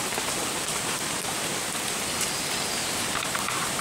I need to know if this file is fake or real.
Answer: fake